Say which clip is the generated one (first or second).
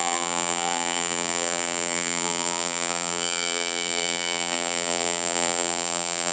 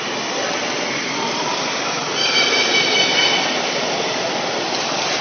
first